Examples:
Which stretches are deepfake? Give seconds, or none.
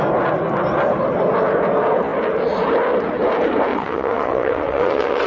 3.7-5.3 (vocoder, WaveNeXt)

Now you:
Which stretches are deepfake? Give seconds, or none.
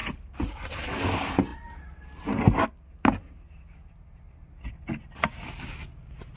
none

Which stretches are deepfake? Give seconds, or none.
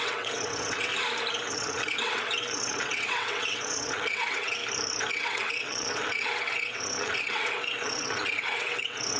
0.0-0.9 (vocoder, WaveNeXt); 1.5-4.6; 5.1-9.2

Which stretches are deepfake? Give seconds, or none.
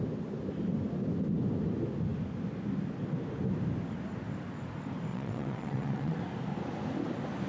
5.1-6.2 (vocoder, WaveNeXt)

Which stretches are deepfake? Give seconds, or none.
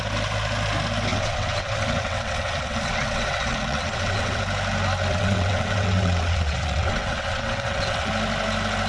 1.1-4.4 (vocoder, WaveNeXt); 5.1-8.1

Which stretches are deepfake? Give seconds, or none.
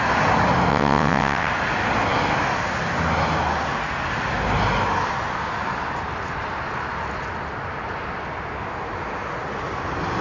0.7-1.5 (vocoder, WaveNeXt)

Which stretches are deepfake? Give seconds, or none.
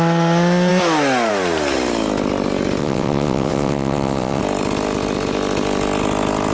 2.8-4.4 (vocoder, WaveNeXt)